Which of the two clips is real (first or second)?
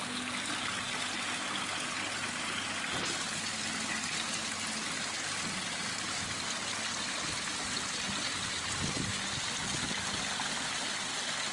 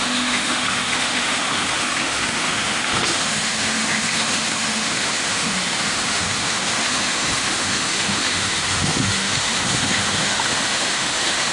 first